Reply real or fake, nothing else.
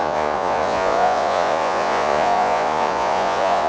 fake